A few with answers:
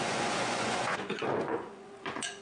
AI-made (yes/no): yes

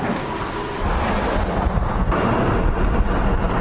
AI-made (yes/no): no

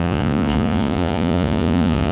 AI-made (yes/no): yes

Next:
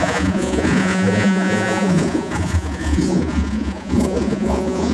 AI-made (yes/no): yes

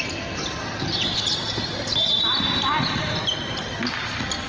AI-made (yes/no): no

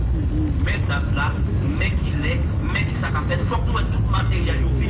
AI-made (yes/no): no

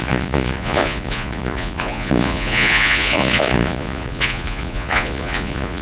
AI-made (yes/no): yes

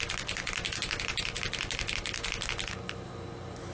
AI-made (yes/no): no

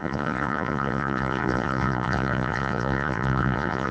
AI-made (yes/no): yes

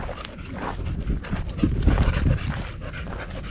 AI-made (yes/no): no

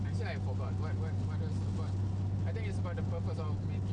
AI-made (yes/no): no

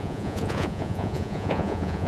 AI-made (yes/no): yes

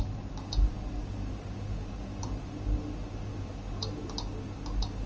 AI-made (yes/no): no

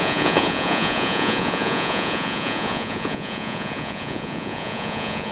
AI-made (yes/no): yes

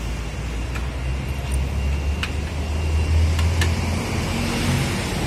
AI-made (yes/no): no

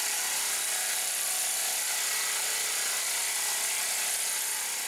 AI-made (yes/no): no